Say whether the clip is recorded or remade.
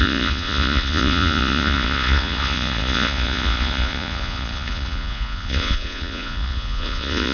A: remade